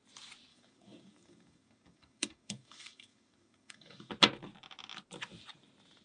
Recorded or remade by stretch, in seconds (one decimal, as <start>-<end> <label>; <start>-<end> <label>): 0.0-0.5 recorded; 0.5-4.1 remade; 4.1-6.0 recorded